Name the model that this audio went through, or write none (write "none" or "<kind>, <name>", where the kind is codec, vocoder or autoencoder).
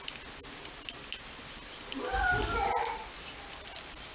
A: none